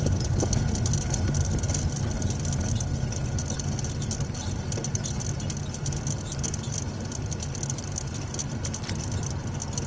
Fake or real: real